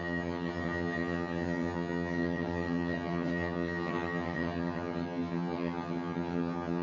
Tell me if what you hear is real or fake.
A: fake